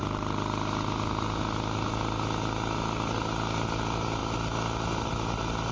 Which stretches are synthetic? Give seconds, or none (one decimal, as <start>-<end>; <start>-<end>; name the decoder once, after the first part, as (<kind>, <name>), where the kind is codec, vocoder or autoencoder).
none